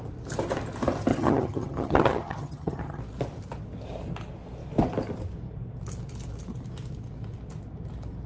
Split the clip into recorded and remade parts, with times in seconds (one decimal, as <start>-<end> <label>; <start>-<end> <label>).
0.0-1.1 recorded; 1.1-3.0 remade; 3.0-8.3 recorded